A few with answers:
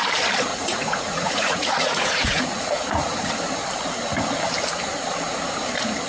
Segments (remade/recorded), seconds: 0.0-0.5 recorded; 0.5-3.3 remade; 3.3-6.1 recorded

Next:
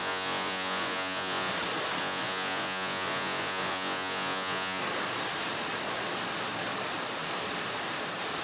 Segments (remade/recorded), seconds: 0.0-1.5 remade; 1.5-2.0 recorded; 2.0-4.8 remade; 4.8-8.4 recorded

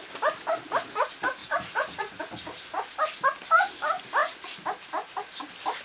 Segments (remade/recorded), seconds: 0.0-1.4 recorded; 1.4-2.2 remade; 2.2-5.8 recorded

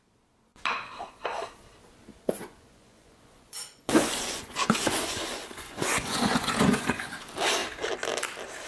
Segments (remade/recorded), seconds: 0.0-0.5 recorded; 0.5-1.2 remade; 1.2-2.1 recorded; 2.1-7.1 remade; 7.1-8.7 recorded